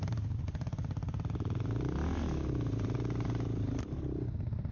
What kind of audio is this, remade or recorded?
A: recorded